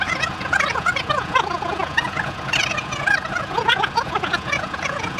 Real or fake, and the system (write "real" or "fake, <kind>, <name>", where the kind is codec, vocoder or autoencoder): fake, vocoder, Vocos